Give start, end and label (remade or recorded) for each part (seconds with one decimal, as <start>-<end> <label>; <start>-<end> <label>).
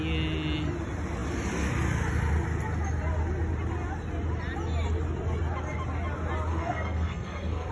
0.0-6.5 recorded; 6.5-7.7 remade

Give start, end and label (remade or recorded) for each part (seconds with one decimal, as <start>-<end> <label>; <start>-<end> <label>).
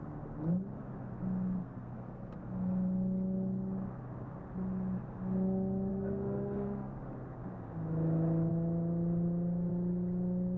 0.0-1.6 recorded; 1.6-2.4 remade; 2.4-5.9 recorded; 5.9-7.0 remade; 7.0-10.6 recorded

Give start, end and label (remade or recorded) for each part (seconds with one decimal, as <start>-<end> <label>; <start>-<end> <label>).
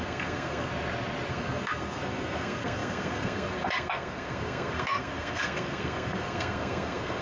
0.0-0.7 remade; 0.7-1.3 recorded; 1.3-7.2 remade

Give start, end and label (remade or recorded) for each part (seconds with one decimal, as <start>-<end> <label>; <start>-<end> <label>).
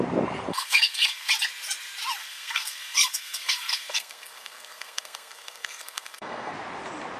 0.0-0.5 recorded; 0.5-1.3 remade; 1.3-2.2 recorded; 2.2-6.5 remade; 6.5-7.2 recorded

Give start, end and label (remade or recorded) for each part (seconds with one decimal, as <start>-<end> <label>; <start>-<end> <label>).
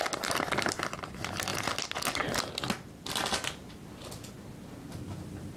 0.0-5.6 recorded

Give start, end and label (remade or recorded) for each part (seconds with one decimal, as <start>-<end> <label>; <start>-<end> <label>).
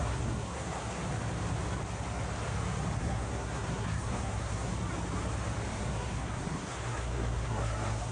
0.0-1.0 remade; 1.0-3.0 recorded; 3.0-4.7 remade; 4.7-5.7 recorded; 5.7-8.1 remade